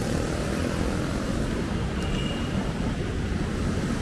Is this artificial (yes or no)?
no